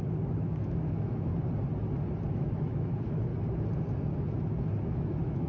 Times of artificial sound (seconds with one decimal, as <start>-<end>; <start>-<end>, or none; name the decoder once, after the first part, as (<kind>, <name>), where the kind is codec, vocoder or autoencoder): 0.0-1.3 (autoencoder, DAC-VAE); 2.3-3.3; 4.8-5.5